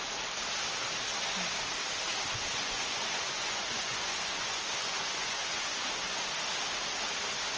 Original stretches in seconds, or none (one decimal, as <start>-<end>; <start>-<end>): 0.0-2.5; 6.2-7.6